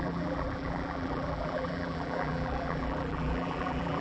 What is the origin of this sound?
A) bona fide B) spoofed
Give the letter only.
B